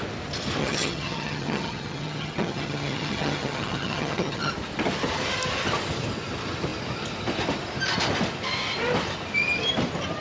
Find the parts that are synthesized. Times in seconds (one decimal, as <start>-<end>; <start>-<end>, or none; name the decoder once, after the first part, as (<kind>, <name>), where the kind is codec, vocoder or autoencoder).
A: 0.6-4.5 (vocoder, HiFi-GAN)